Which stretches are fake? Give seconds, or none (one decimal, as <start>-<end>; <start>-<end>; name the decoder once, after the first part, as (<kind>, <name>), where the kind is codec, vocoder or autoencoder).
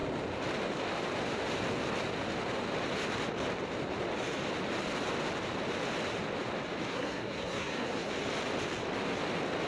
6.9-8.1 (codec, SNAC)